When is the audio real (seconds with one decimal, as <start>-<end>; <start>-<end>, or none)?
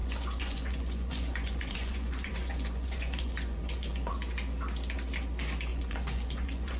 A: 4.1-5.7